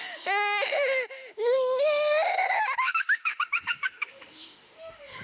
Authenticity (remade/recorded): remade